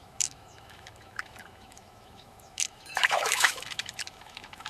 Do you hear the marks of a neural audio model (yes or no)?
yes